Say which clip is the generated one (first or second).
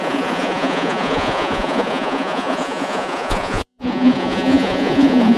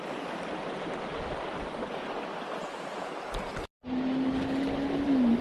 first